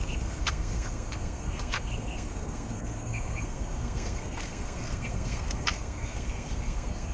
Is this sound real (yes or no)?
no